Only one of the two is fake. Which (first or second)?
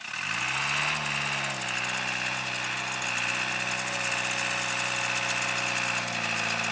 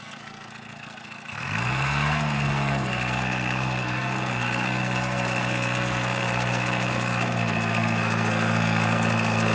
second